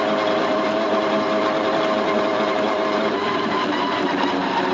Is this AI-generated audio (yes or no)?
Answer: yes